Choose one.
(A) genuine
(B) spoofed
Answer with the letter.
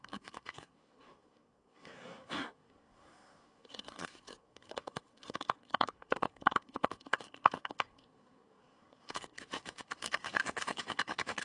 B